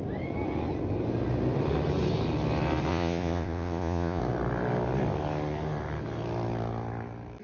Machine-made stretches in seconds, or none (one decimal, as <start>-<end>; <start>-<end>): 2.9-4.2